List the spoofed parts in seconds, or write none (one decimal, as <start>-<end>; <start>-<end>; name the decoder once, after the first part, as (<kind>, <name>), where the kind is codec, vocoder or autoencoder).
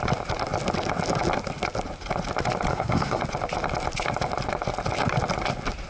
2.7-3.2 (codec, SNAC)